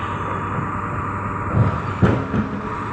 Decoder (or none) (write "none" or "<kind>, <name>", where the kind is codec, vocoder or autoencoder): none